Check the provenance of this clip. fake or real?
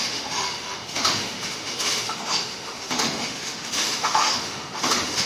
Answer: fake